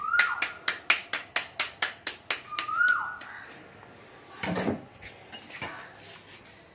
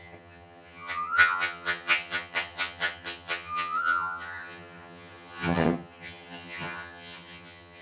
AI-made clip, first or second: second